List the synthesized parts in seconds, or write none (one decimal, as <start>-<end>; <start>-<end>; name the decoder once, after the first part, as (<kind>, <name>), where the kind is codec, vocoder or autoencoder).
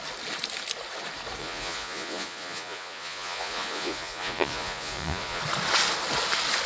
1.4-5.4 (vocoder, Vocos)